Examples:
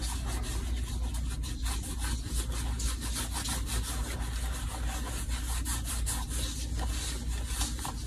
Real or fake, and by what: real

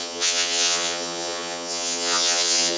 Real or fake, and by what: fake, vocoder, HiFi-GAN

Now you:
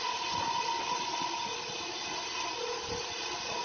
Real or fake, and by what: real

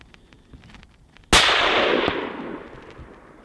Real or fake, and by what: real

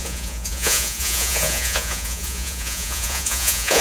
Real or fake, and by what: fake, vocoder, Vocos